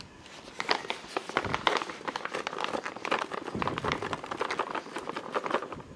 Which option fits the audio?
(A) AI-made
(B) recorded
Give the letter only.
B